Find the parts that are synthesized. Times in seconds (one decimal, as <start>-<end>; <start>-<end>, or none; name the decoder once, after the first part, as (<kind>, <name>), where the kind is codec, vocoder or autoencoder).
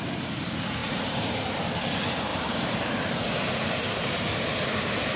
0.8-1.6 (vocoder, BigVGAN v2); 2.3-3.3